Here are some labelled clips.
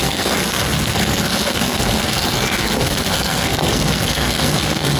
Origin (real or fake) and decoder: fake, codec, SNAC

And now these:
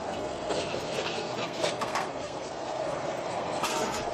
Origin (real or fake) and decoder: fake, codec, SNAC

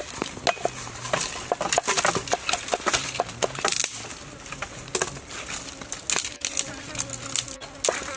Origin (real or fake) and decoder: real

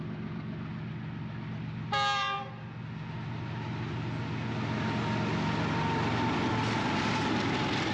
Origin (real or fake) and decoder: real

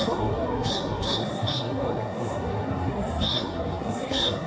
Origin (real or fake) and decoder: fake, codec, SNAC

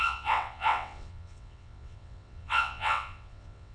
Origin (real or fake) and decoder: fake, vocoder, WaveNeXt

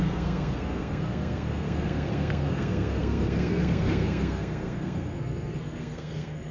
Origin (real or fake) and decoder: fake, codec, SNAC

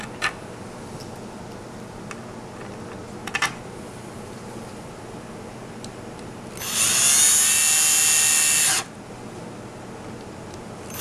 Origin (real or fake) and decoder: real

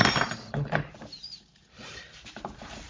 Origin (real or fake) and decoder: fake, vocoder, BigVGAN v2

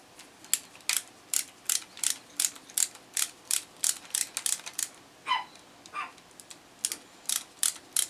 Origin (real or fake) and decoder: real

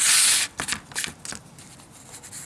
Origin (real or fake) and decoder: real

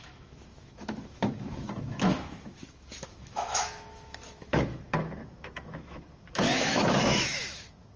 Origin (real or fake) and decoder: fake, autoencoder, DAC-VAE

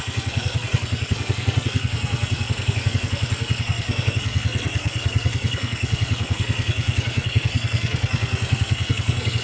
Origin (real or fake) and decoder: fake, codec, SNAC